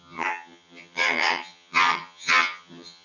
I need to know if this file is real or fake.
fake